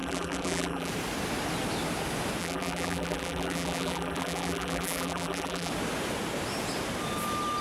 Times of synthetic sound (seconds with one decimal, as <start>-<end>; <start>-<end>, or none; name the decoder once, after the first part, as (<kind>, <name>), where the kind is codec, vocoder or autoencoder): 0.0-0.9 (vocoder, BigVGAN v2); 2.4-5.7